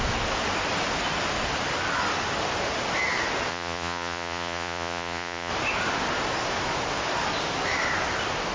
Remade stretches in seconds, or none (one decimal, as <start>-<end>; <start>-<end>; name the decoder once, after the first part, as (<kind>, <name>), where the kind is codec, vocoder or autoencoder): 3.5-5.5 (vocoder, Vocos)